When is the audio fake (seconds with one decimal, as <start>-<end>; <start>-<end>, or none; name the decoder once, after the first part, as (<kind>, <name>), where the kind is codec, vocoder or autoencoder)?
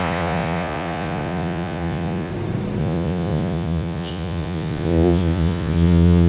0.0-2.3 (vocoder, Vocos); 2.8-6.3